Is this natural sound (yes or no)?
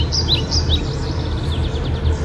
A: yes